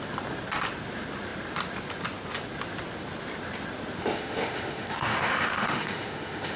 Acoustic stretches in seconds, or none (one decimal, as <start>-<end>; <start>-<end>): 0.0-4.0